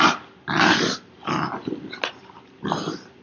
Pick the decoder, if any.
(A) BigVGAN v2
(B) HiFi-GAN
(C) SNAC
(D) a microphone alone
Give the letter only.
D